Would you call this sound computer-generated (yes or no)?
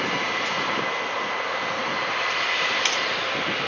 no